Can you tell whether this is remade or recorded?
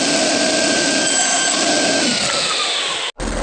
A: recorded